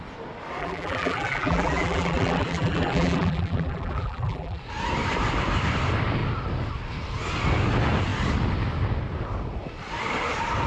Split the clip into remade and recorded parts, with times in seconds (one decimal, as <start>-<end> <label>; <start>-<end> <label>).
0.0-0.6 recorded; 0.6-4.6 remade; 4.6-10.7 recorded